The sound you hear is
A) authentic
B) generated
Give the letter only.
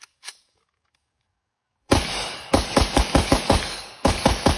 B